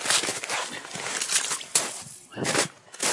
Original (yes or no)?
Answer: yes